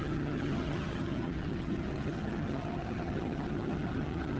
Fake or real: fake